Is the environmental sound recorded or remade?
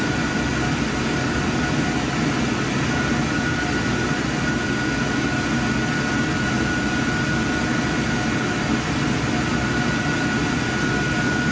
recorded